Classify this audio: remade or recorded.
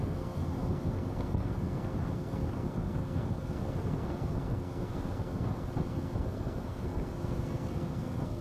remade